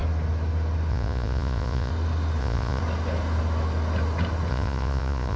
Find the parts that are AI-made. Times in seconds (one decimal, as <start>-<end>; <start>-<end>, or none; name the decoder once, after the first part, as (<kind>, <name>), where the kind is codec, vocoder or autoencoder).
0.9-1.9 (vocoder, Vocos); 2.4-2.8; 4.5-5.4